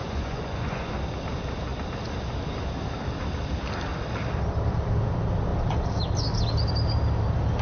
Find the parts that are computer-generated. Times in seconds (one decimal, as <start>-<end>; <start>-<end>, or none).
0.0-0.9